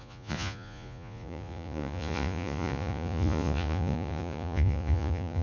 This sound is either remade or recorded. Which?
remade